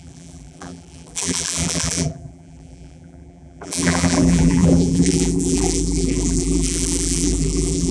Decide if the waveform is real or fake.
fake